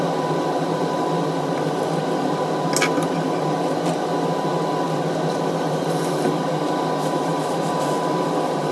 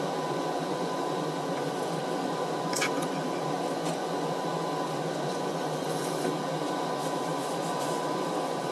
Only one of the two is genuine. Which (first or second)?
first